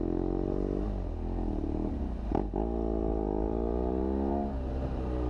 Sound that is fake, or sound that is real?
real